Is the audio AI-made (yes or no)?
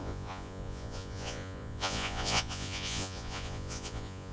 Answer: yes